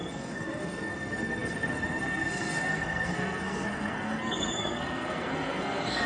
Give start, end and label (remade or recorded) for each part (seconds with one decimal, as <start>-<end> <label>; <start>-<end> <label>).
0.0-6.1 remade